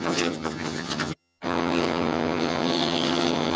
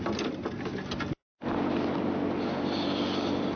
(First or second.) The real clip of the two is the second